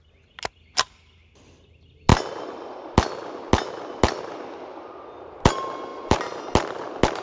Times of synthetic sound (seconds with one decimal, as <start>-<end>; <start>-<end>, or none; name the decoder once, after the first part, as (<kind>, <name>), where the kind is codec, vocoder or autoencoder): 5.9-6.4 (vocoder, BigVGAN v2)